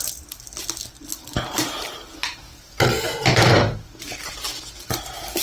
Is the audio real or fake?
real